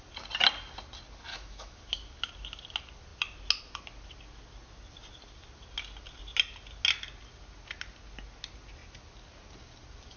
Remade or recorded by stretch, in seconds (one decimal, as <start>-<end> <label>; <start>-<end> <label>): 0.0-1.3 recorded; 1.3-1.8 remade; 1.8-10.2 recorded